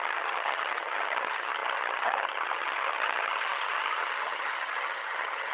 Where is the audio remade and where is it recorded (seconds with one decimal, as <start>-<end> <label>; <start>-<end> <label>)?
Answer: 0.0-5.5 remade